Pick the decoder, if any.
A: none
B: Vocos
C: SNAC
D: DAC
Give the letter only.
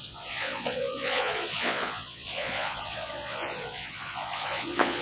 B